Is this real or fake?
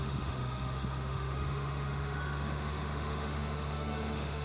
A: fake